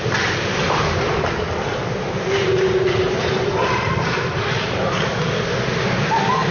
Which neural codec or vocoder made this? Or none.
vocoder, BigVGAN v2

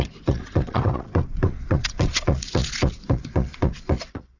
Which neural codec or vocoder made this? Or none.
vocoder, Vocos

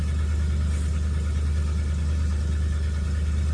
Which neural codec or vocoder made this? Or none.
none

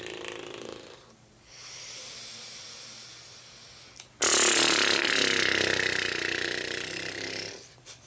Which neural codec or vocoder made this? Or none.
none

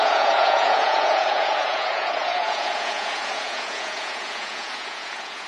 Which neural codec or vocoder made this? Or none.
vocoder, Vocos